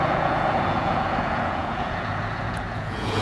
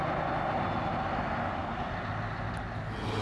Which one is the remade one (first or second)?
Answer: first